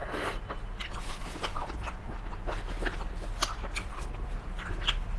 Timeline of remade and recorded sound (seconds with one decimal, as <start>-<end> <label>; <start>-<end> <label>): 0.0-5.2 recorded